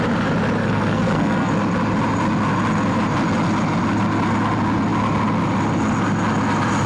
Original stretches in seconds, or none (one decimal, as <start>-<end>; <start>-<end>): 0.0-0.6; 1.5-6.9